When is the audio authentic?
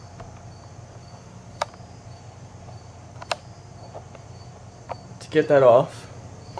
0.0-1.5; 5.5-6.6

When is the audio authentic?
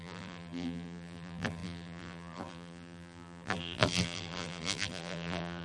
none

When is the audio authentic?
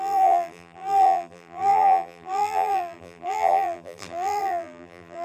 none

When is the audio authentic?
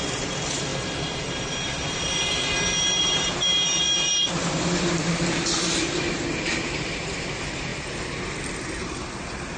none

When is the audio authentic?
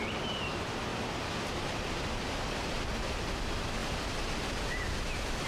0.9-3.2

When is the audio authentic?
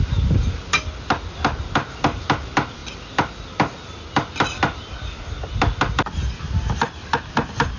0.0-7.8